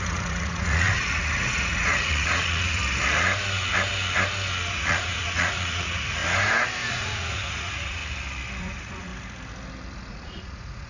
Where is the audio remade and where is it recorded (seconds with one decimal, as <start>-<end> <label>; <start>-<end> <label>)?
0.0-2.8 remade; 2.8-4.7 recorded; 4.7-6.2 remade; 6.2-6.9 recorded; 6.9-8.0 remade; 8.0-8.6 recorded; 8.6-9.1 remade; 9.1-10.1 recorded; 10.1-10.9 remade